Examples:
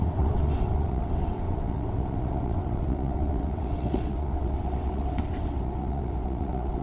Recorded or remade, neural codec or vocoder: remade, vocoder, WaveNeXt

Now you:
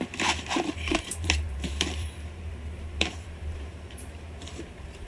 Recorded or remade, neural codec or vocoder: remade, vocoder, BigVGAN v2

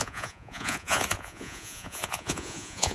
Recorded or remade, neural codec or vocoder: remade, vocoder, Vocos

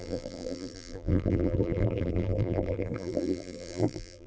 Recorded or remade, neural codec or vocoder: remade, vocoder, BigVGAN v2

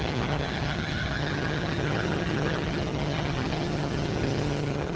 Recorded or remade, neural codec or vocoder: remade, vocoder, HiFi-GAN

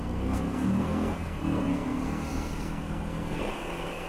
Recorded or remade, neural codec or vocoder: remade, codec, SNAC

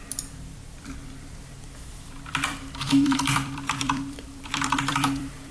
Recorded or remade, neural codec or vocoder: remade, vocoder, BigVGAN v2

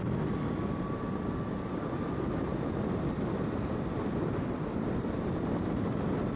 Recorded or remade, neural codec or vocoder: recorded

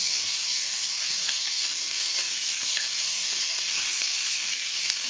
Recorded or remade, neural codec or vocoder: remade, codec, DAC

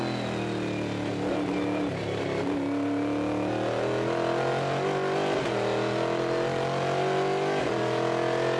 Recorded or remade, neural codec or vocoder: recorded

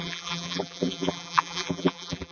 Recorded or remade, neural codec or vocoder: remade, vocoder, BigVGAN v2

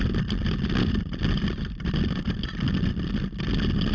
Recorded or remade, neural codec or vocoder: recorded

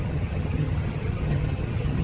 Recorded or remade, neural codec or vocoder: remade, vocoder, HiFi-GAN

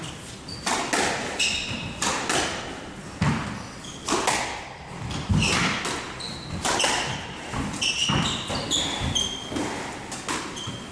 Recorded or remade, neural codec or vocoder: recorded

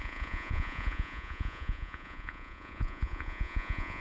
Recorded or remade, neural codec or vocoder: remade, vocoder, Vocos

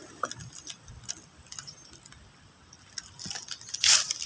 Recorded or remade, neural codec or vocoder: recorded